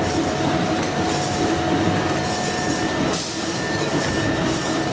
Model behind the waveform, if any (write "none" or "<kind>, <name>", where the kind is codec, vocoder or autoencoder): none